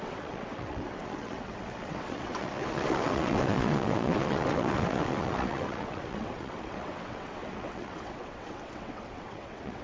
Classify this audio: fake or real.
fake